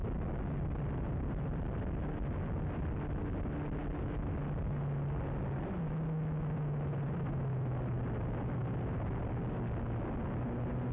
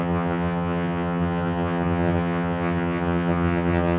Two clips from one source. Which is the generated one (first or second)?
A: second